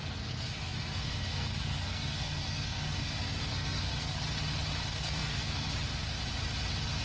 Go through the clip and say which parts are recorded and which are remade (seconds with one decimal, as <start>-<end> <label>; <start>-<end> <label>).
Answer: 0.0-4.2 remade; 4.2-4.9 recorded; 4.9-5.7 remade; 5.7-7.0 recorded